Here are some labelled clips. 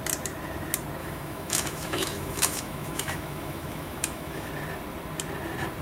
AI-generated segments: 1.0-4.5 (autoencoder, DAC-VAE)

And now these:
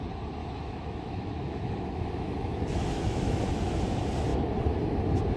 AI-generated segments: 0.4-3.6 (autoencoder, DAC-VAE)

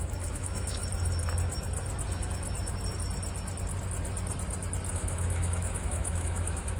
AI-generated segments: 0.0-0.8 (autoencoder, DAC-VAE); 4.9-6.8